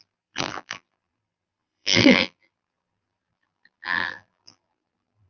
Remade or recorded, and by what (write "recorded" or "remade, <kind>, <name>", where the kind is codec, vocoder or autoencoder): remade, vocoder, BigVGAN v2